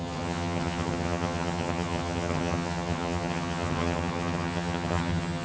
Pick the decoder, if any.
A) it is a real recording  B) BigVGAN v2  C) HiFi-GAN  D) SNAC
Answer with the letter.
C